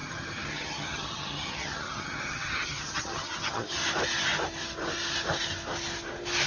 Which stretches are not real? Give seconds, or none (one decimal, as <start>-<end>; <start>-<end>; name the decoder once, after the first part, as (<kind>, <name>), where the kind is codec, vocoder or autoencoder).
0.0-3.8 (vocoder, HiFi-GAN)